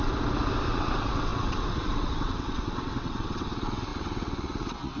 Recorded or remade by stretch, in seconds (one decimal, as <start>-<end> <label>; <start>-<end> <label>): 0.0-0.7 recorded; 0.7-5.0 remade